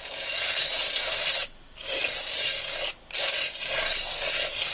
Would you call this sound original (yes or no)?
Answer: yes